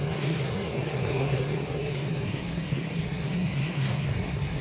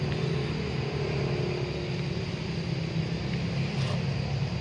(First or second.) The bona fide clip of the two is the second